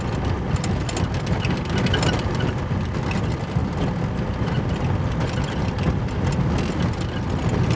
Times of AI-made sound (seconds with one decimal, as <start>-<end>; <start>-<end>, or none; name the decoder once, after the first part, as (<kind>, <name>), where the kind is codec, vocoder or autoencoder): none